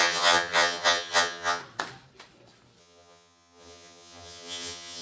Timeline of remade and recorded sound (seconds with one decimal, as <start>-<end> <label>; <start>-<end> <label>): 0.0-1.6 remade; 1.6-2.8 recorded; 2.8-5.0 remade